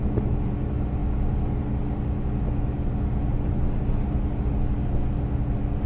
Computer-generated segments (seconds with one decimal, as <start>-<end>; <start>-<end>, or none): none